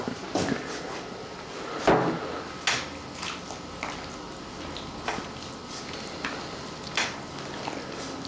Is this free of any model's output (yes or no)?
yes